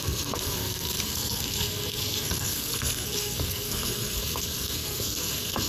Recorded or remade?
remade